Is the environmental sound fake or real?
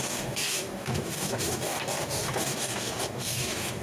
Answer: fake